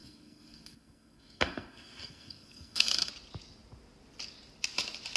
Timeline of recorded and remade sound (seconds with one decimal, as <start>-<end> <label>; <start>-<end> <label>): 0.0-3.1 remade; 3.1-5.2 recorded